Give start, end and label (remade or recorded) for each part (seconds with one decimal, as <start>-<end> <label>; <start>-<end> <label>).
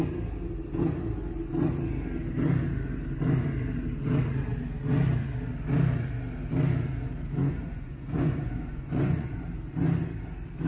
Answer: 0.0-7.4 recorded; 7.4-9.4 remade; 9.4-10.7 recorded